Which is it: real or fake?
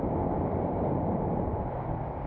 real